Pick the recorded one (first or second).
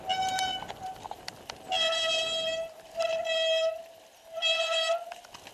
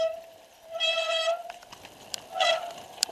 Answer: first